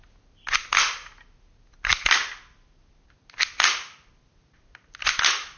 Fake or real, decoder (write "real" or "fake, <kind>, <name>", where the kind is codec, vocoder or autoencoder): real